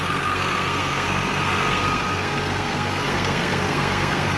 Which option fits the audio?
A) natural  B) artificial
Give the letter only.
B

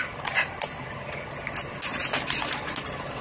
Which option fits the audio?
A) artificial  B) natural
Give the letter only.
B